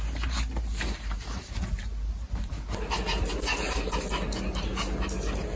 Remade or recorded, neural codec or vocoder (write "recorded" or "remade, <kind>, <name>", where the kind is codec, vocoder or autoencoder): recorded